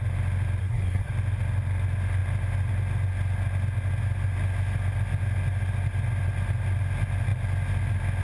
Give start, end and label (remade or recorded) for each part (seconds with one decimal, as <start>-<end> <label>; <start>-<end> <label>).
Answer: 0.0-0.6 recorded; 0.6-1.1 remade; 1.1-8.2 recorded